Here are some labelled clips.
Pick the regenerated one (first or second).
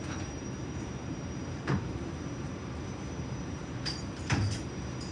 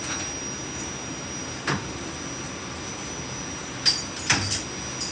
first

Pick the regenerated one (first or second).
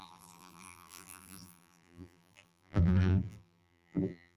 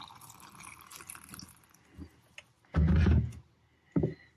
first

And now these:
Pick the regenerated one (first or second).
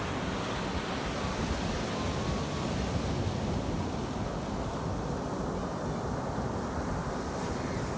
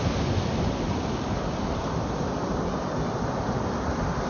second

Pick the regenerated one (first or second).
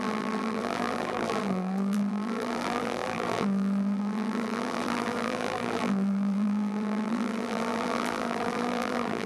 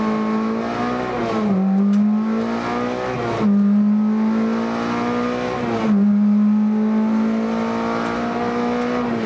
first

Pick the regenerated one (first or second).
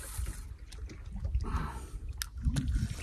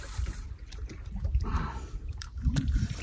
second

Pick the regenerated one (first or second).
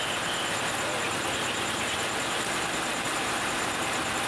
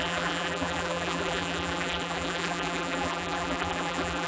second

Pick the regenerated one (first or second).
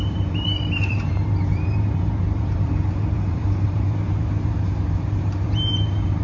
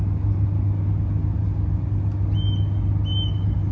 first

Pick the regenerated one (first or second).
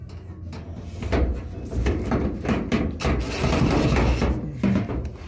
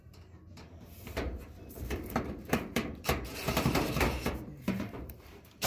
second